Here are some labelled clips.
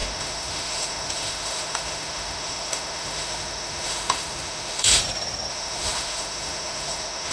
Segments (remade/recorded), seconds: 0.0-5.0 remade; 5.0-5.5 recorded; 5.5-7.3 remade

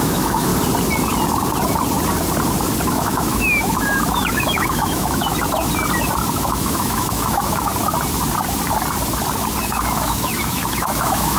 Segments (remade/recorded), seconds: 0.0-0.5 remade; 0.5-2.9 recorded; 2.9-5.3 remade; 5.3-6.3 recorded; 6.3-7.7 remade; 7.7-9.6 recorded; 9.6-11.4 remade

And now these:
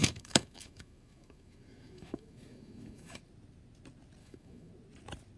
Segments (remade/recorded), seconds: 0.0-3.2 remade; 3.2-4.2 recorded; 4.2-4.7 remade; 4.7-5.4 recorded

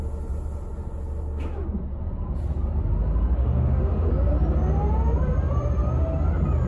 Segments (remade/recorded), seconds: 0.0-3.4 recorded; 3.4-4.1 remade; 4.1-6.7 recorded